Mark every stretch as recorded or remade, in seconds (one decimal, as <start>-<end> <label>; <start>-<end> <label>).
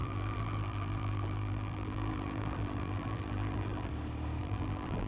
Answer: 0.0-3.9 remade; 3.9-4.4 recorded; 4.4-5.1 remade